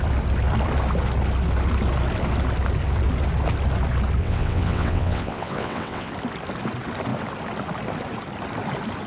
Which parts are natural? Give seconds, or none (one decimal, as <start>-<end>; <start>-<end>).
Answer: 0.0-4.2; 6.1-9.1